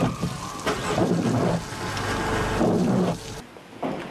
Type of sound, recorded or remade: recorded